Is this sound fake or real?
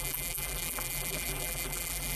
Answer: fake